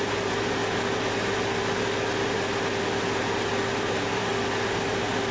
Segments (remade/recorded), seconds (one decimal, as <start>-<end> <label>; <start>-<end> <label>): 0.0-0.6 remade; 0.6-3.7 recorded; 3.7-4.3 remade; 4.3-5.3 recorded